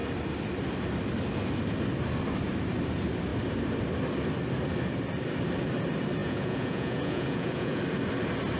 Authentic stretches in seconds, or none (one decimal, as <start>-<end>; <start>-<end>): 0.0-6.2; 7.8-8.6